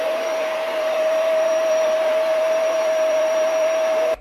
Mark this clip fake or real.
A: fake